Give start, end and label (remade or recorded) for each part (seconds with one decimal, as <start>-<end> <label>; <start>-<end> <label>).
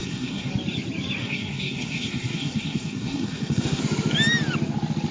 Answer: 0.0-0.5 remade; 0.5-1.2 recorded; 1.2-3.8 remade; 3.8-5.1 recorded